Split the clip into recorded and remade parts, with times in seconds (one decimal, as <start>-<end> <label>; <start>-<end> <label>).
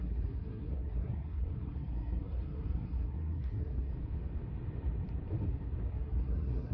0.0-3.9 remade; 3.9-5.9 recorded; 5.9-6.7 remade